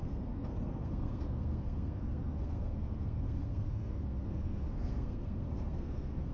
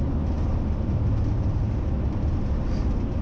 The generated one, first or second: first